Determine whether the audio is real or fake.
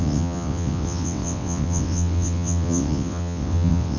fake